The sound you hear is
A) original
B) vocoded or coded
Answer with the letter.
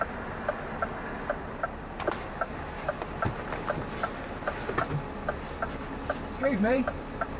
A